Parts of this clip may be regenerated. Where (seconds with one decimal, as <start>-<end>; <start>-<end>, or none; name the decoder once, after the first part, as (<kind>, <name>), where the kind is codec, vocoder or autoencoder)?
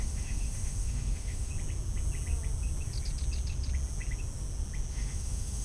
0.0-1.5 (autoencoder, DAC-VAE); 4.9-5.6